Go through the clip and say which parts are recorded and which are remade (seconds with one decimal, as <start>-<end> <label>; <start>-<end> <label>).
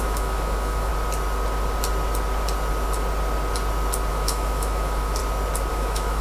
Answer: 0.0-0.9 remade; 0.9-4.1 recorded; 4.1-5.2 remade; 5.2-5.7 recorded; 5.7-6.2 remade